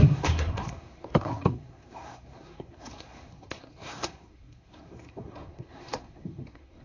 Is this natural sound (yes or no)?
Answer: no